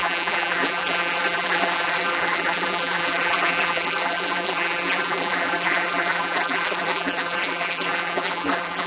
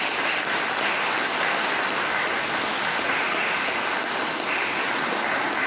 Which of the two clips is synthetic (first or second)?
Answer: first